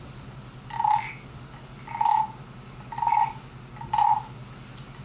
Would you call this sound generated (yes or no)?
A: no